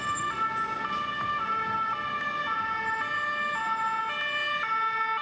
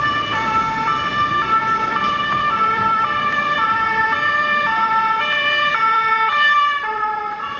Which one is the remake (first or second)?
second